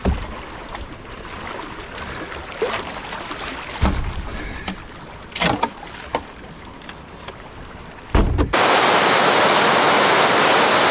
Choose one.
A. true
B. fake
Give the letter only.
A